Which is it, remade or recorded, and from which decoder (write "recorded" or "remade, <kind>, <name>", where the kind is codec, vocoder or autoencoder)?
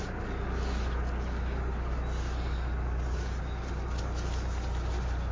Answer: recorded